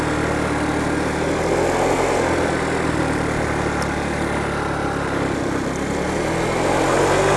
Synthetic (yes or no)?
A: no